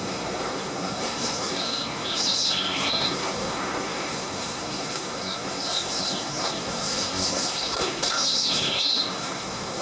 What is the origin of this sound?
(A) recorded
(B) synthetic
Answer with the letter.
B